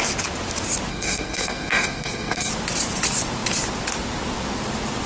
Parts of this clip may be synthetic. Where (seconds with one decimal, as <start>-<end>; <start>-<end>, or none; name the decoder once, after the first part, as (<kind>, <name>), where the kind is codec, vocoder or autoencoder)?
0.9-2.5 (codec, SNAC)